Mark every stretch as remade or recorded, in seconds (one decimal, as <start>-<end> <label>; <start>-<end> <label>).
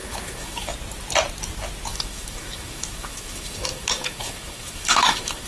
0.0-0.7 remade; 0.7-1.9 recorded; 1.9-5.5 remade